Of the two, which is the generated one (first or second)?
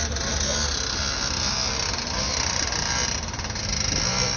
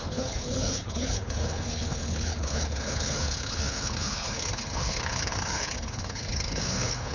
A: second